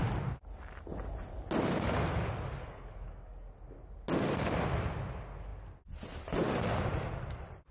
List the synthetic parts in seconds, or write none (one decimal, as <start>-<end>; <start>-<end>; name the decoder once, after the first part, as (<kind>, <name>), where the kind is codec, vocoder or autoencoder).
2.6-3.5 (codec, DAC)